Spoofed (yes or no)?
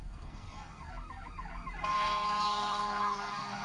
yes